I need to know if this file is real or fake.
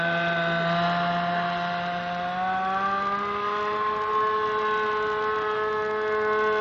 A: real